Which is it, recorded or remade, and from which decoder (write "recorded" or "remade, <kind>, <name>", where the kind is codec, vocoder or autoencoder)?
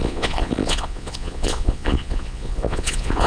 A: remade, vocoder, Vocos